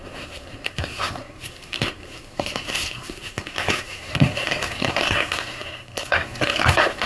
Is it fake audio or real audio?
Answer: fake